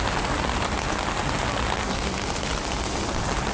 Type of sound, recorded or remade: recorded